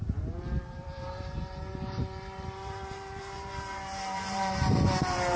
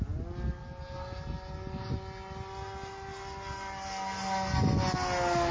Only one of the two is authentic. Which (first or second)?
second